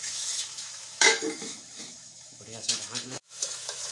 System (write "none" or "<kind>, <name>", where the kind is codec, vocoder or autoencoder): autoencoder, DAC-VAE